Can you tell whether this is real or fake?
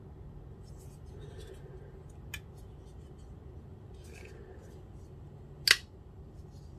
real